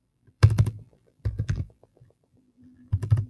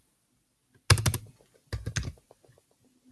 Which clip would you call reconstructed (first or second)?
first